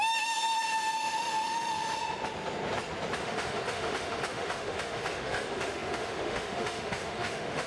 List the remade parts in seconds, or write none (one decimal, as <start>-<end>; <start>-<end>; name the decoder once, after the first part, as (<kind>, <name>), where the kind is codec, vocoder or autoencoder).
0.0-2.0 (autoencoder, DAC-VAE); 3.2-7.7